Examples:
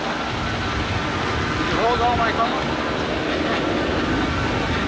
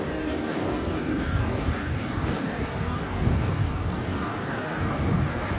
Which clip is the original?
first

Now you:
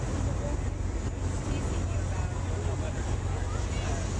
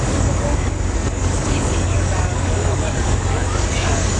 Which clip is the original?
first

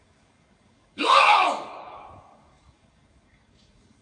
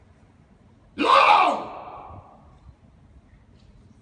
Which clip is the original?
second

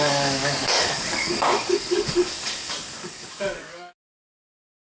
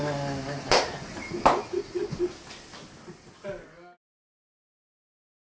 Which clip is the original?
second